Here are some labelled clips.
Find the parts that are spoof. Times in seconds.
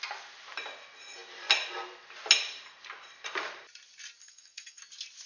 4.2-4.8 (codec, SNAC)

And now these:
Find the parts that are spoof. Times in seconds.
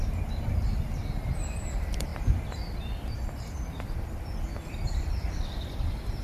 0.0-6.2 (vocoder, BigVGAN v2)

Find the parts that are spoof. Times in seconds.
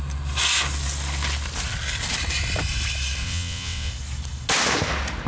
3.2-3.9 (vocoder, WaveNeXt)